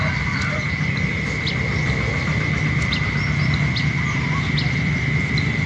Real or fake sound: real